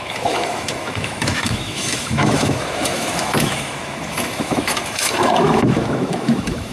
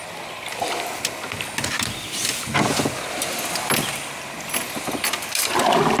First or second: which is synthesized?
first